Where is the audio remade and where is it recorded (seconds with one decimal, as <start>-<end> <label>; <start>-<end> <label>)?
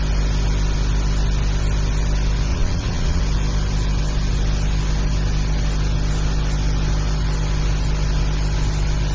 0.0-2.5 recorded; 2.5-3.2 remade; 3.2-9.1 recorded